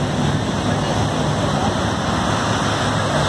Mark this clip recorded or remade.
recorded